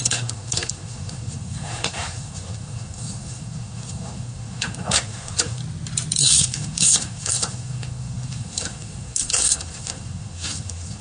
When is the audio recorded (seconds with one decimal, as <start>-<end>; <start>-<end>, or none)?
5.6-6.2